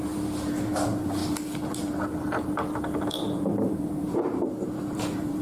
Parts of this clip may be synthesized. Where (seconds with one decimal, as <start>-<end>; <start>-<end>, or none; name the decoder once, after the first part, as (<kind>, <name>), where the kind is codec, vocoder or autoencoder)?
0.0-5.4 (vocoder, BigVGAN v2)